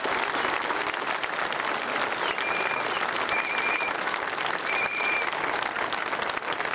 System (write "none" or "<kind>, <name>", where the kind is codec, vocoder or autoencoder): none